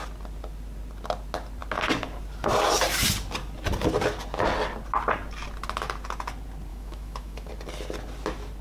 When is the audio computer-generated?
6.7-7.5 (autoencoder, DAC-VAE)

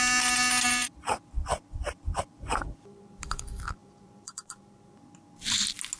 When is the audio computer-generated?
0.8-3.4 (vocoder, BigVGAN v2); 3.8-4.7

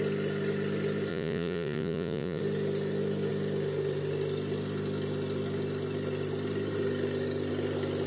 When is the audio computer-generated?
1.1-2.4 (vocoder, Vocos)

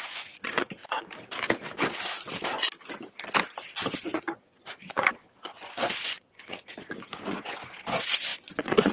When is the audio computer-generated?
0.0-0.8 (vocoder, Vocos); 4.0-8.9